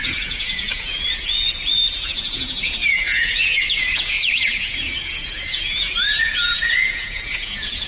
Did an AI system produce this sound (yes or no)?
yes